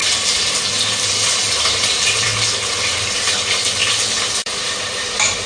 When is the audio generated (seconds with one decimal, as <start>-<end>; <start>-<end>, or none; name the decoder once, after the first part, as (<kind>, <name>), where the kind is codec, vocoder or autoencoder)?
1.1-2.3 (vocoder, BigVGAN v2); 3.1-3.8; 4.4-5.5